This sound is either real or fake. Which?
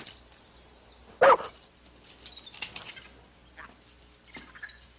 real